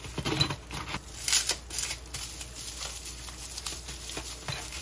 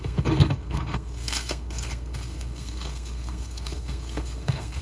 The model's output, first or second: second